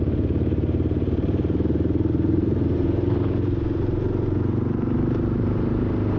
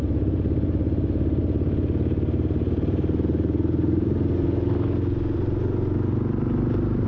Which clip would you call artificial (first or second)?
first